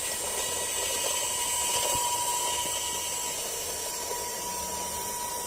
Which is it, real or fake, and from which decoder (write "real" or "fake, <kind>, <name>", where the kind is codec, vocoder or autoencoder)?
real